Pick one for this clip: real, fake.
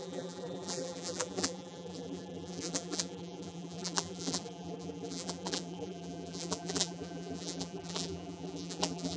fake